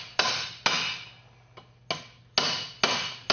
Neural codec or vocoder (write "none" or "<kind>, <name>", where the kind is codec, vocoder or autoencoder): none